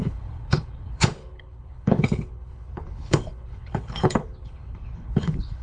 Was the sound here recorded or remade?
remade